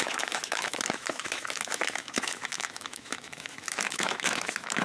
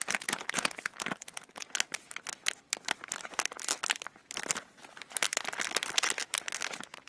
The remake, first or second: first